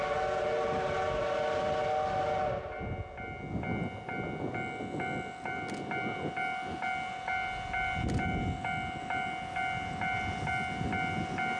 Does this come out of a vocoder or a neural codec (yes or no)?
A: no